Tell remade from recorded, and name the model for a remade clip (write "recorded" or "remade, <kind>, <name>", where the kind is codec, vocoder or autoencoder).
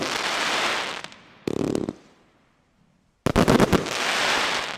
recorded